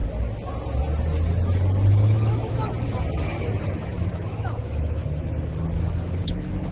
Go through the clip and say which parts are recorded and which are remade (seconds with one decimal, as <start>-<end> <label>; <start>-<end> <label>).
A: 0.0-2.0 recorded; 2.0-2.6 remade; 2.6-4.1 recorded; 4.1-5.0 remade; 5.0-6.2 recorded; 6.2-6.7 remade